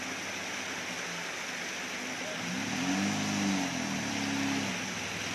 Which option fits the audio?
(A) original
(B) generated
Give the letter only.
A